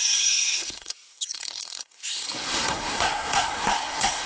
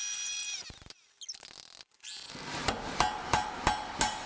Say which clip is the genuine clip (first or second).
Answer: second